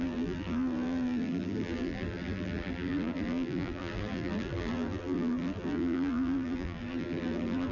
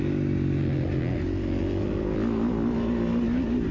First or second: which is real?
second